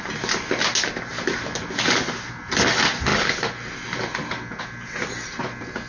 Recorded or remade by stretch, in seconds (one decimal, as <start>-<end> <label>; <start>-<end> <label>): 0.0-5.9 recorded